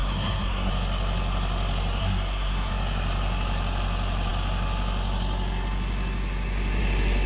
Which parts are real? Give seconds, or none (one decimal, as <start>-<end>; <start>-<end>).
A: 0.7-2.0; 2.7-7.3